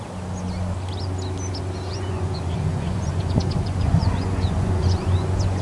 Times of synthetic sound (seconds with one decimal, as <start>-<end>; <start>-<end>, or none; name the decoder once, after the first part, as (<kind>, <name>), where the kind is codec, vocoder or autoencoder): 1.9-5.6 (vocoder, Vocos)